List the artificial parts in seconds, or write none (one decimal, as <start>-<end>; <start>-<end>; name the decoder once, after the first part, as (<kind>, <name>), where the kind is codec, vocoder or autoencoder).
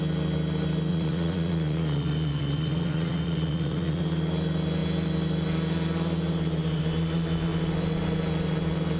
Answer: 0.9-4.0 (vocoder, Vocos)